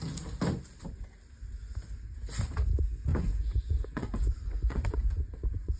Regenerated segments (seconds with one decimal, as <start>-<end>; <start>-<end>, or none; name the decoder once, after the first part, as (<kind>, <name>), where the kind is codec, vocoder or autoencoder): 3.1-5.8 (vocoder, Vocos)